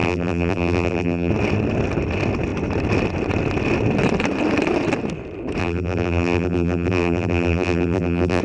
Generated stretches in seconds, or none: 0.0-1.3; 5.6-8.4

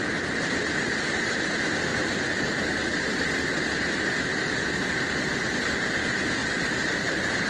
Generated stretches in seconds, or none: 1.9-3.3; 6.4-7.5

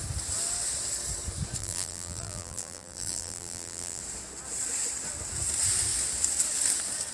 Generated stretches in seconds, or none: 1.6-4.0

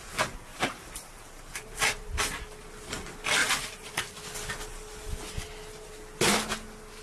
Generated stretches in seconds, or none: 0.5-2.1; 3.4-4.2

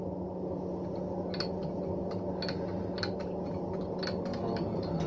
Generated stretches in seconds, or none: 4.3-5.1

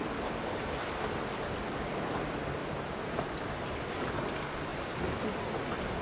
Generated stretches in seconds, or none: 2.6-4.1; 4.7-5.3